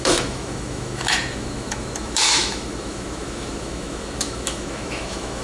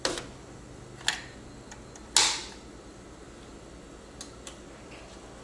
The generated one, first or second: first